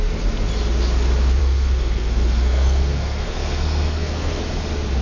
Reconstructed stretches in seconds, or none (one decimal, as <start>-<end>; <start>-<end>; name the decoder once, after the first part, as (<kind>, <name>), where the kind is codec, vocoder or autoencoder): 1.4-4.4 (codec, SNAC)